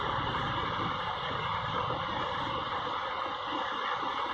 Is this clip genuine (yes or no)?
yes